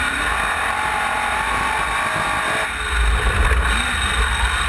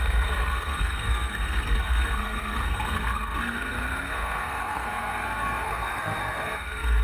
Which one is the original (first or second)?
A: first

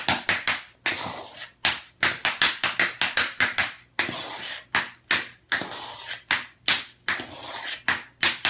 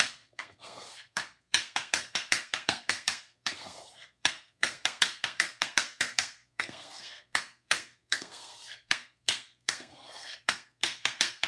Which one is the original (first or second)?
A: first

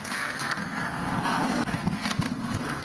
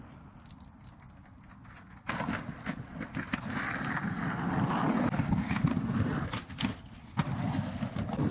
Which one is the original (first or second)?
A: second